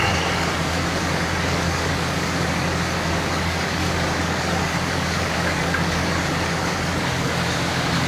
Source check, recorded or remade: remade